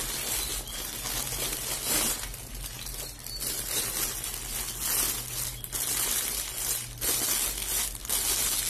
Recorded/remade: recorded